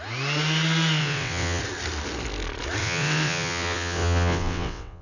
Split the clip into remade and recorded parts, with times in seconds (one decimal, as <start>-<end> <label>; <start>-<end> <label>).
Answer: 0.0-1.0 recorded; 1.0-1.6 remade; 1.6-2.8 recorded; 2.8-5.0 remade

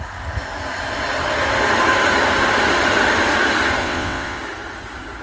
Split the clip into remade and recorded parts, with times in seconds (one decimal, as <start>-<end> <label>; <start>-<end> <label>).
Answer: 0.0-3.8 recorded; 3.8-4.4 remade; 4.4-5.2 recorded

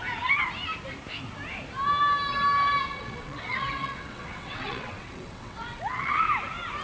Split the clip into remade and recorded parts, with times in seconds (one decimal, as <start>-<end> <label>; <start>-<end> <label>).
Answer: 0.0-2.9 recorded; 2.9-6.2 remade; 6.2-6.8 recorded